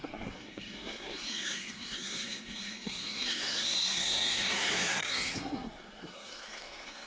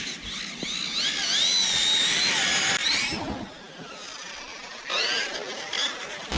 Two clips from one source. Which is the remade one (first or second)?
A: first